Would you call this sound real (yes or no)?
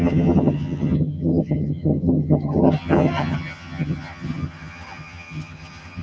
no